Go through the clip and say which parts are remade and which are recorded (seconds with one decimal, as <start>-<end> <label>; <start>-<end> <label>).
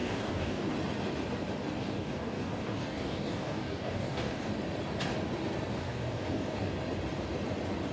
0.0-0.7 remade; 0.7-1.8 recorded; 1.8-4.5 remade; 4.5-5.7 recorded; 5.7-6.7 remade; 6.7-7.9 recorded